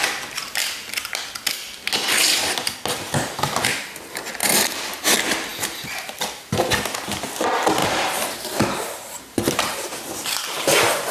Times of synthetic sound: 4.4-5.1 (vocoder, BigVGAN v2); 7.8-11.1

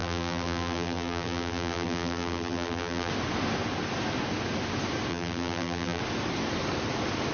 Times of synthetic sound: 0.0-3.1 (vocoder, BigVGAN v2); 5.1-6.0

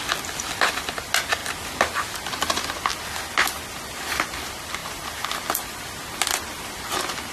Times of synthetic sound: 4.8-5.8 (vocoder, BigVGAN v2)

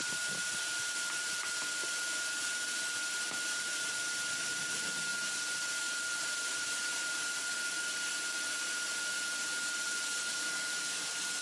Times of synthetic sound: 0.0-11.4 (vocoder, BigVGAN v2)

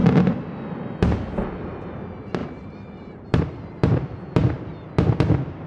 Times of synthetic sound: 2.4-3.4 (vocoder, BigVGAN v2)